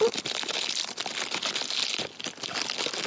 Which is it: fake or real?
fake